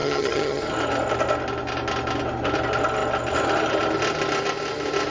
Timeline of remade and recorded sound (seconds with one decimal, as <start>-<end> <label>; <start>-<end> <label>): 0.0-0.6 remade; 0.6-5.1 recorded